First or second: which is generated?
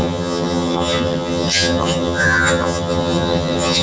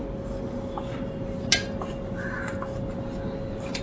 first